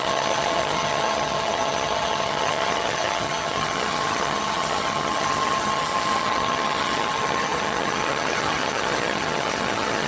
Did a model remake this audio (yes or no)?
yes